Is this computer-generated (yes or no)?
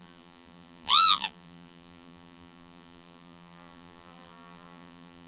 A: yes